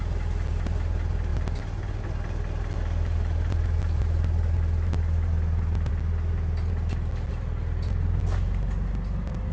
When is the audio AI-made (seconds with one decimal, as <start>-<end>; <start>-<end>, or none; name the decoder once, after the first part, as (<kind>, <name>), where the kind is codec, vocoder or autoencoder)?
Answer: none